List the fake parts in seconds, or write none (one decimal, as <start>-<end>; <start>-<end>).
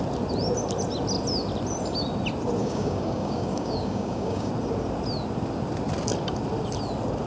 2.6-4.5